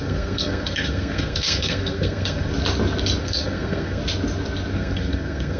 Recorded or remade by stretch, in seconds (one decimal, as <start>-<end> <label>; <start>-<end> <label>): 0.0-2.5 remade; 2.5-3.2 recorded; 3.2-4.0 remade; 4.0-4.7 recorded; 4.7-5.6 remade